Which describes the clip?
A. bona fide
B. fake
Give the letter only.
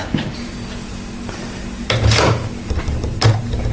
A